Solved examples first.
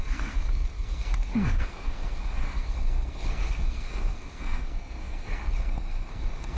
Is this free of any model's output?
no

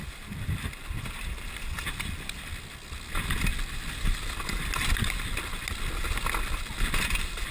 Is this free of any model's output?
yes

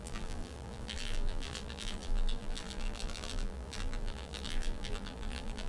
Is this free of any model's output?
no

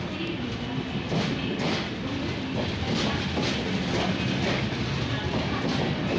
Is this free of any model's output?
yes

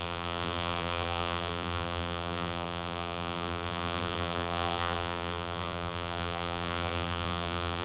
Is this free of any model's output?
no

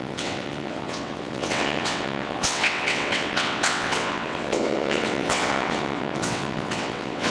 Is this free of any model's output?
no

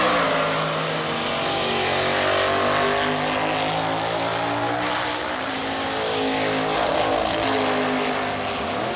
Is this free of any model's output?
yes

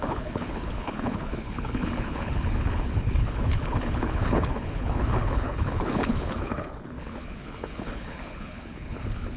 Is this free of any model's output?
no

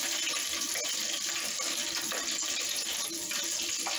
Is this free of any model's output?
yes